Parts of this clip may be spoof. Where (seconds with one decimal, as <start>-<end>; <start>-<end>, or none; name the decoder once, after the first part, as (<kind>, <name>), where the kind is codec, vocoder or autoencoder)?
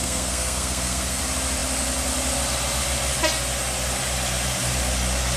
0.0-1.2 (codec, SNAC)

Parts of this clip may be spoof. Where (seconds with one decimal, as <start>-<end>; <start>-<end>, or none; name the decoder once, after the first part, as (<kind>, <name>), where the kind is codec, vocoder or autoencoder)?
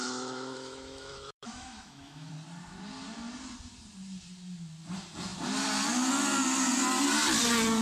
0.0-2.3 (autoencoder, DAC-VAE)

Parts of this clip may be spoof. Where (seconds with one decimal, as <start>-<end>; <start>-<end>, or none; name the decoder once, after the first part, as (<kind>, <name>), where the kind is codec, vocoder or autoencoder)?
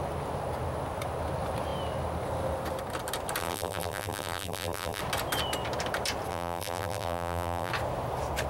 3.4-5.0 (vocoder, BigVGAN v2); 6.3-7.7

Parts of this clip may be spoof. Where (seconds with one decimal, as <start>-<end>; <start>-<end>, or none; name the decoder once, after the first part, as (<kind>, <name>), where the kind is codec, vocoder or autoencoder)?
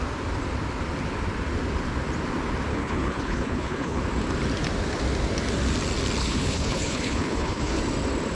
2.7-4.0 (codec, HILCodec); 6.2-7.8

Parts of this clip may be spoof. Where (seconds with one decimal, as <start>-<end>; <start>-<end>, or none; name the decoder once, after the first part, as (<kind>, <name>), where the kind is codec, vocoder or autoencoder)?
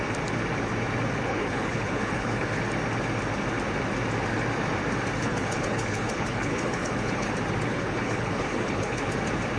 1.3-2.6 (codec, HILCodec); 5.2-7.3; 7.7-9.1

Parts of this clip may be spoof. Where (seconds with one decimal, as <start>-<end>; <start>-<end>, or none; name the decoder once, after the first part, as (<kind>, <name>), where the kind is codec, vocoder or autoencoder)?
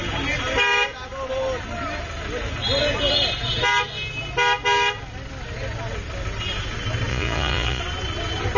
7.1-7.8 (vocoder, Vocos)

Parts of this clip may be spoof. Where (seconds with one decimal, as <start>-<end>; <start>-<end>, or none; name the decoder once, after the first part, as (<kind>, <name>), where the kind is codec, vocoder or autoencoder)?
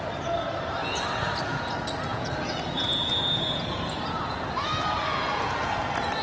0.8-1.7 (vocoder, Vocos); 2.1-5.8